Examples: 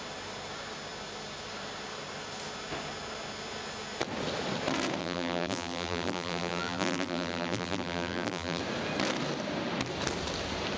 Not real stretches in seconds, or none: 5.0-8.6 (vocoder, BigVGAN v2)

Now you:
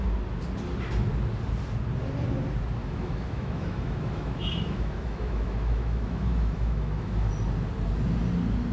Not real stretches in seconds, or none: 2.8-7.3 (autoencoder, DAC-VAE)